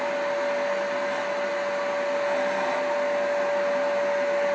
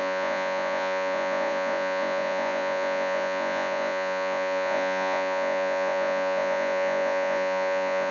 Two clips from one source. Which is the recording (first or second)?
first